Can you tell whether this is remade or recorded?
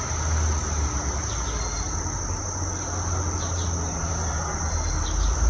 recorded